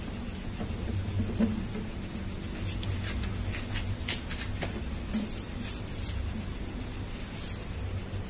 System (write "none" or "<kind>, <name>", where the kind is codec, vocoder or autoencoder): none